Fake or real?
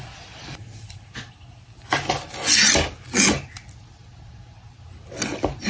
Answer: real